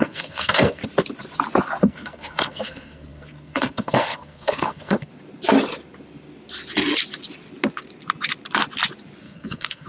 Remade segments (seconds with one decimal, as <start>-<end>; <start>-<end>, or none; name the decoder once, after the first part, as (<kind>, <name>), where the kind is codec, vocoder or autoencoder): 0.0-0.8 (codec, SNAC); 1.8-5.1; 9.2-9.9